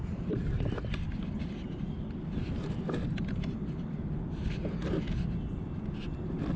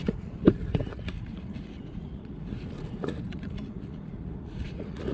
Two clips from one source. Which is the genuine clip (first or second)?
first